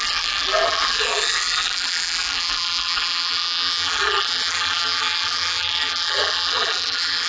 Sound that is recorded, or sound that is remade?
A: remade